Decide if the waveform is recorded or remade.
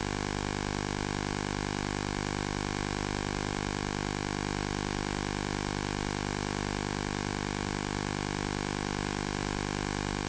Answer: recorded